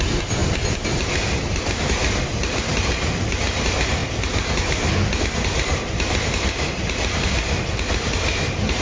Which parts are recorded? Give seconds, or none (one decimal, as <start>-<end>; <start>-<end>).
0.0-8.8